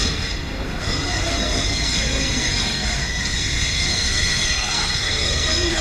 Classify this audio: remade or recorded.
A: remade